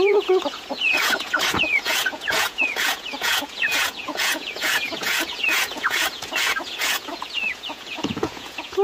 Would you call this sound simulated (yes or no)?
yes